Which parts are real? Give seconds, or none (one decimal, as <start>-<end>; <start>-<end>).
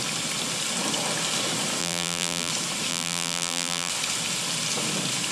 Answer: 0.0-1.8; 2.5-2.9; 3.9-5.3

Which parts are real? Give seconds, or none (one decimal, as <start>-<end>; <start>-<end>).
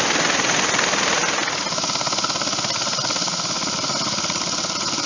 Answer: 0.0-5.1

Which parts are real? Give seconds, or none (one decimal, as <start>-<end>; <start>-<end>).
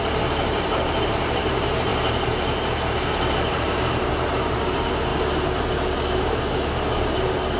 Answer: 1.9-3.5; 5.1-6.2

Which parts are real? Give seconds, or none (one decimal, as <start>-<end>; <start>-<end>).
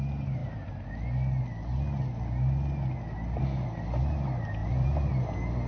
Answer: 0.0-4.6; 5.1-5.7